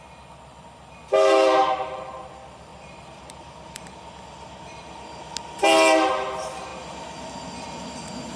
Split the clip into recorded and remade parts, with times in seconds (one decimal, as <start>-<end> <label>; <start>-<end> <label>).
0.0-1.6 recorded; 1.6-2.3 remade; 2.3-2.7 recorded; 2.7-3.9 remade; 3.9-8.4 recorded